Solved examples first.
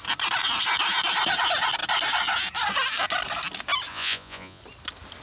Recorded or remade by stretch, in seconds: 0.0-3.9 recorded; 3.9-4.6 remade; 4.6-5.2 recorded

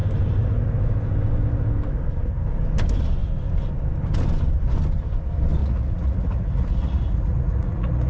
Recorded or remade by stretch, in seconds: 0.0-5.6 recorded; 5.6-8.1 remade

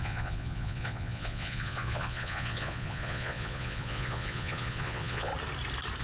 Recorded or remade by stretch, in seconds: 0.0-5.3 remade; 5.3-6.0 recorded

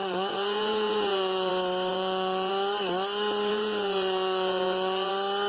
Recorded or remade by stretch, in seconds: 0.0-1.5 remade; 1.5-1.9 recorded; 1.9-2.5 remade; 2.5-3.5 recorded; 3.5-5.1 remade; 5.1-5.5 recorded